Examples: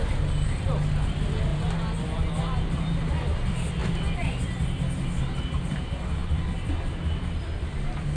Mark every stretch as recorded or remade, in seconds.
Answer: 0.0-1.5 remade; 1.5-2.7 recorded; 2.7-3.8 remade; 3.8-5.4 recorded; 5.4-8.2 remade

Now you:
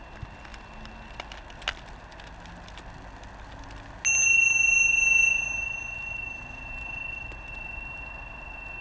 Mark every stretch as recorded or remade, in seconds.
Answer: 0.0-8.8 recorded

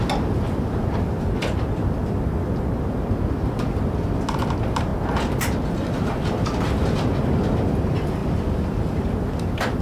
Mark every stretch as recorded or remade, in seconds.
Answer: 0.0-9.8 recorded

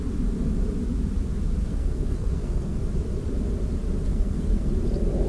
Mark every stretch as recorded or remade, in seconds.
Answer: 0.0-1.6 recorded; 1.6-2.8 remade; 2.8-4.1 recorded; 4.1-4.7 remade; 4.7-5.3 recorded